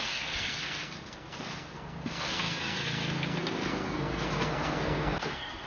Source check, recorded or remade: remade